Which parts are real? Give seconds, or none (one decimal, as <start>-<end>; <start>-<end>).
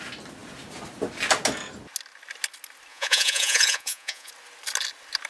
0.0-2.9; 4.3-5.3